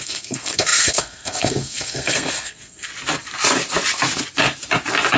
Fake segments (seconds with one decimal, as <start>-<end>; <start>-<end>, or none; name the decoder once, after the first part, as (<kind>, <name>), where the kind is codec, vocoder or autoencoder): 0.0-2.9 (codec, SNAC)